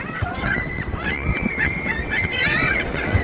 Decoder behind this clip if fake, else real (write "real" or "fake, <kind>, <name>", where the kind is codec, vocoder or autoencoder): fake, vocoder, WaveNeXt